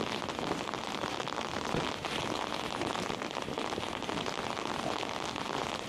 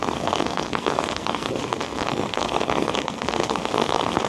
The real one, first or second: first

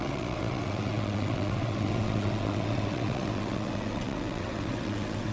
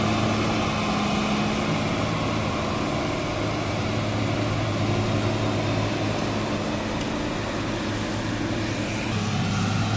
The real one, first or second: second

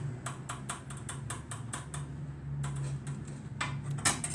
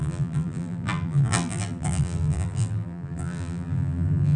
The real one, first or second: first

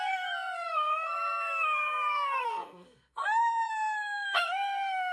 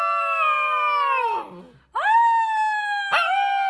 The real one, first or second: second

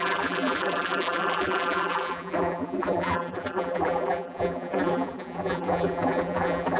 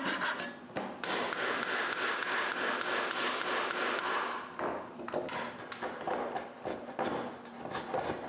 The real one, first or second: second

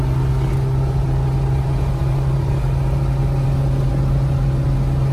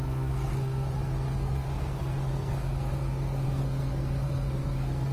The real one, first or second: first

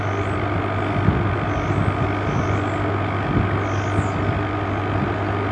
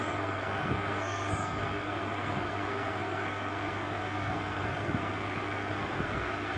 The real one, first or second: first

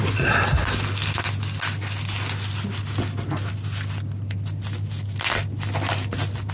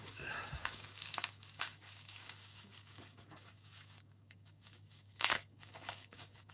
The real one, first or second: first